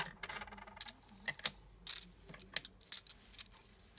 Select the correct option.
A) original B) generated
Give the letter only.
A